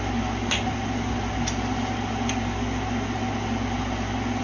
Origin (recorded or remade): recorded